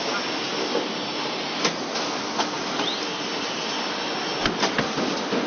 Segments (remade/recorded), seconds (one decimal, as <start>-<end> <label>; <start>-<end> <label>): 0.0-5.5 recorded